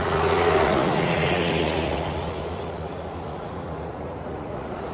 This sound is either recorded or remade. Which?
remade